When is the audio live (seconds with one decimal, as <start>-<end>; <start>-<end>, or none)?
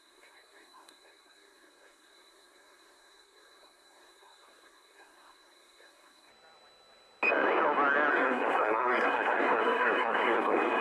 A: 6.3-8.1